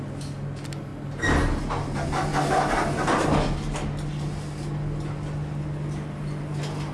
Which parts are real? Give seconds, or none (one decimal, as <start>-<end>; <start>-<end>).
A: 0.0-6.9